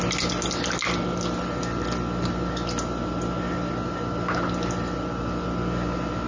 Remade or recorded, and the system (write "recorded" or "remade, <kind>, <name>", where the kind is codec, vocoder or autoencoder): recorded